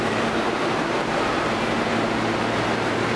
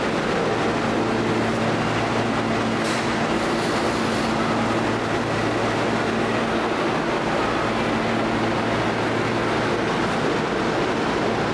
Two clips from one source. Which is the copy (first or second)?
first